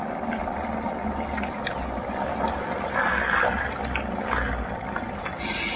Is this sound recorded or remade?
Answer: recorded